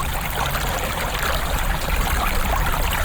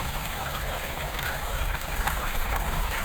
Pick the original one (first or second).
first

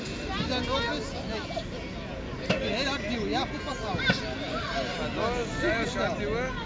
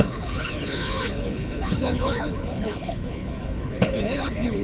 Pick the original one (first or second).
first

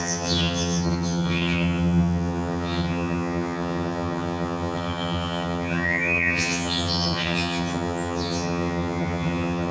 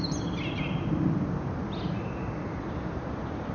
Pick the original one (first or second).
second